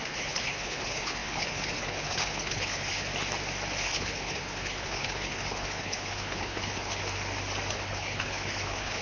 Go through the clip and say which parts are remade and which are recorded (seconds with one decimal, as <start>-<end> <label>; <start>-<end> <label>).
0.0-3.1 remade; 3.1-3.8 recorded; 3.8-7.0 remade; 7.0-7.7 recorded; 7.7-9.0 remade

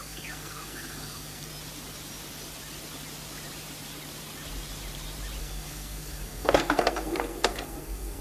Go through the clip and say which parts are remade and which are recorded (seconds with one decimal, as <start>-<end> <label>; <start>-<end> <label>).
0.0-1.5 remade; 1.5-5.4 recorded; 5.4-8.2 remade

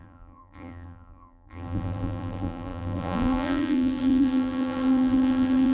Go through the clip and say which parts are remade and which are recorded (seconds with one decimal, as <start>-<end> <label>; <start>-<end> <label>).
0.0-5.7 remade

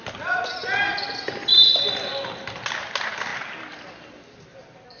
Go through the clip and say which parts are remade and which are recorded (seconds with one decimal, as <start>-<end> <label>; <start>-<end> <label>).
0.0-5.0 recorded

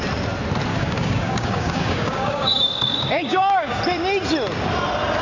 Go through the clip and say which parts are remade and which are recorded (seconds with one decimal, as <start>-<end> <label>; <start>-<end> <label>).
0.0-0.7 recorded; 0.7-3.8 remade; 3.8-5.2 recorded

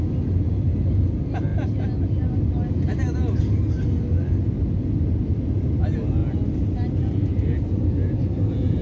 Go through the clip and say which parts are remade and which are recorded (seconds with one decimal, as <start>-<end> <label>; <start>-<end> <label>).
0.0-8.8 recorded

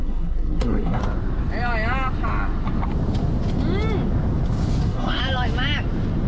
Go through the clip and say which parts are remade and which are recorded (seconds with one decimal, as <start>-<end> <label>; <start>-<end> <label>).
0.0-1.0 remade; 1.0-4.8 recorded; 4.8-5.2 remade; 5.2-6.3 recorded

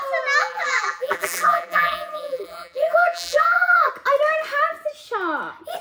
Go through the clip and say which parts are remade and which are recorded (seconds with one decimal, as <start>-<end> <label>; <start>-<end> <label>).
0.0-0.4 recorded; 0.4-3.9 remade; 3.9-5.8 recorded